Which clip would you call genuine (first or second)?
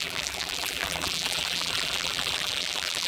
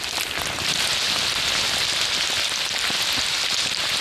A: second